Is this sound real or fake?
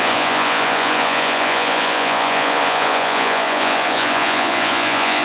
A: fake